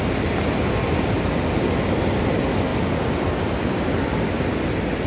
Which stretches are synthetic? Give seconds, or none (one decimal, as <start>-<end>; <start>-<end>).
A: none